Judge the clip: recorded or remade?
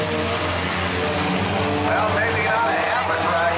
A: recorded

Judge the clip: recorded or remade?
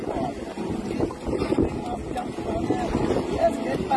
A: recorded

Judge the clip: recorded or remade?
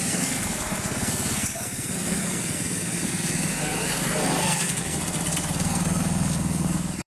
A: remade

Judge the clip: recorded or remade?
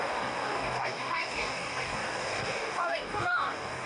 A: remade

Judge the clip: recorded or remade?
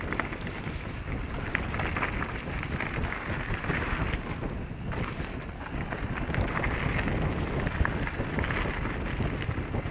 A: recorded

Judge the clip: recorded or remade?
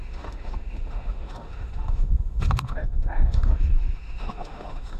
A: remade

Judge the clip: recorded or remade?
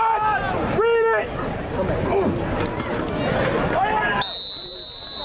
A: recorded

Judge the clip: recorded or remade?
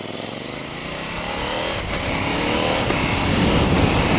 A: recorded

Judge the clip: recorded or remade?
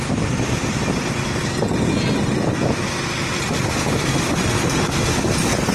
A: recorded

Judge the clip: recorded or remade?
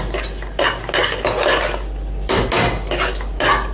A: recorded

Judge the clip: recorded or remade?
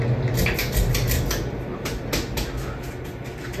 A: recorded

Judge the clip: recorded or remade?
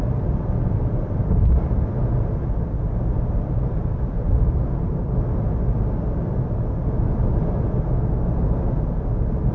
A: remade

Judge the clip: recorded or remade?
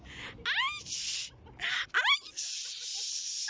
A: recorded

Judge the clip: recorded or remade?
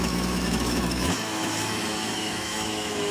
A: remade